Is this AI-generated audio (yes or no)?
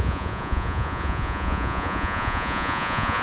yes